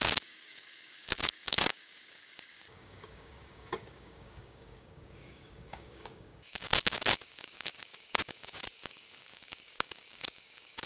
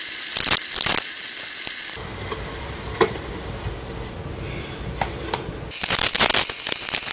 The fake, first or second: first